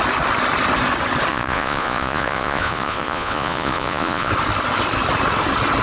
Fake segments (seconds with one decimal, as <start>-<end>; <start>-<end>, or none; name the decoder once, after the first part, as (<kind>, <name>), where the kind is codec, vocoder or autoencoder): 1.3-4.3 (vocoder, Vocos)